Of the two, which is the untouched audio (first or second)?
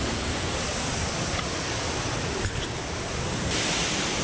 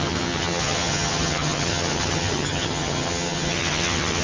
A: first